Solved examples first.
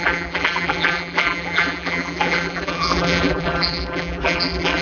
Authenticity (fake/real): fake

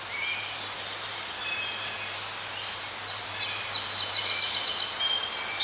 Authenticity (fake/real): real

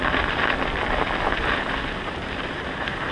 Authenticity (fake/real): real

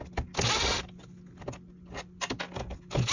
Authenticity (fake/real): real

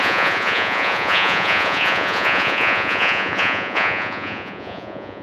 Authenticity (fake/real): fake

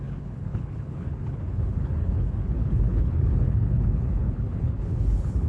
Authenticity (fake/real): fake